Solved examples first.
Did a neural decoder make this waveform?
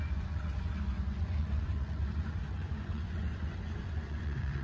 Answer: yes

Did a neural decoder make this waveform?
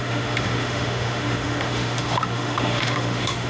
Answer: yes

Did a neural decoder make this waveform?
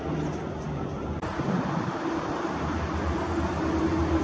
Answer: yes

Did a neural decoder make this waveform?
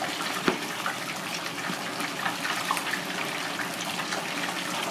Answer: no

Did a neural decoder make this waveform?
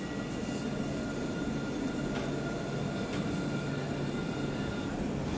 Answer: no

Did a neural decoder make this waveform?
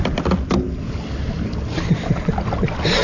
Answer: no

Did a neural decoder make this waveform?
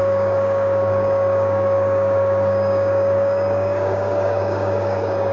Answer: yes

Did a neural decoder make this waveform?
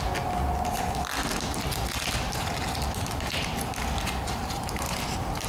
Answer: no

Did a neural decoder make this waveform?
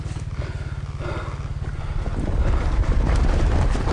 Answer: no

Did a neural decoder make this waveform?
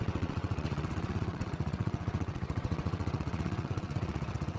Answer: yes